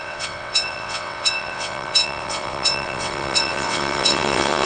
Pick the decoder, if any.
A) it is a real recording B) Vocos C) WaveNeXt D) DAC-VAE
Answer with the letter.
C